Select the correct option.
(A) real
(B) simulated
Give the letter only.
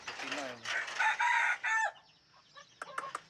A